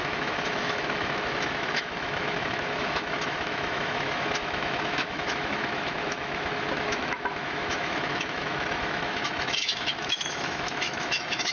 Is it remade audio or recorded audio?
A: remade